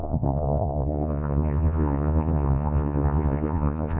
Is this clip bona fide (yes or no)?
no